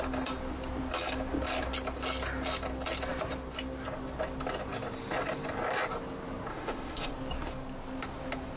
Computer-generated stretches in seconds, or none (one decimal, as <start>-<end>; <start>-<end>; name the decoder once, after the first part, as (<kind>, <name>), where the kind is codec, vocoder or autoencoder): 6.5-7.1 (autoencoder, DAC-VAE)